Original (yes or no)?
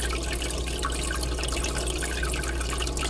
yes